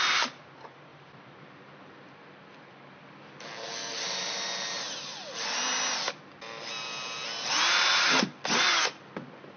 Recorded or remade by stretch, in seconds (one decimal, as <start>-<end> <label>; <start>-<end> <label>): 0.0-0.9 recorded; 0.9-4.5 remade; 4.5-9.6 recorded